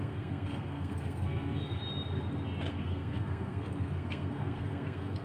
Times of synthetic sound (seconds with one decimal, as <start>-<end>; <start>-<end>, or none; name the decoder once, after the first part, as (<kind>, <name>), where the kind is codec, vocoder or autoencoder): 0.0-1.8 (codec, SNAC); 2.7-5.2